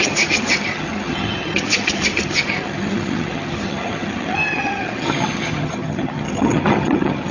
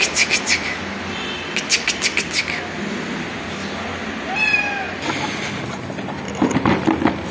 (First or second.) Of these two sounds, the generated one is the first